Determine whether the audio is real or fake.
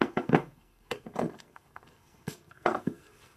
fake